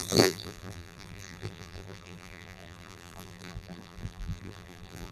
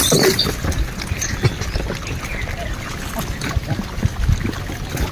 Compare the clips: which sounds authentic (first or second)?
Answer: second